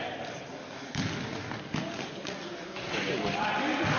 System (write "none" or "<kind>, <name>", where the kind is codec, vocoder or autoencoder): none